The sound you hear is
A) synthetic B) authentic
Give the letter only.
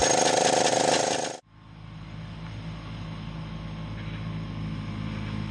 B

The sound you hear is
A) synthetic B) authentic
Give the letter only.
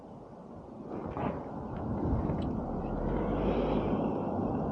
B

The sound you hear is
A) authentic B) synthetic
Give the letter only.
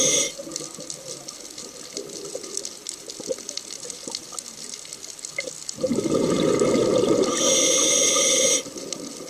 A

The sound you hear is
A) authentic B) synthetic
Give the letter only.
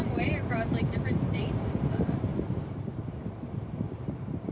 B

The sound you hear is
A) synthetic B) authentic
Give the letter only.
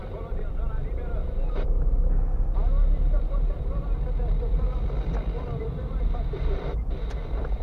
A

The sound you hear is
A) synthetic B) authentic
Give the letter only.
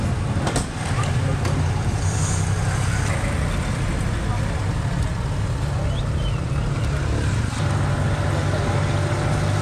B